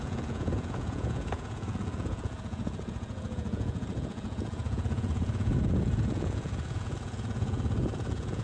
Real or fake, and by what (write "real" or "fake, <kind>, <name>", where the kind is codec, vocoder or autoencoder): fake, vocoder, Vocos